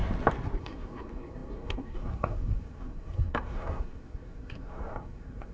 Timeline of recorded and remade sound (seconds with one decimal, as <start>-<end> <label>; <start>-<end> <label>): 0.0-0.6 recorded; 0.6-5.5 remade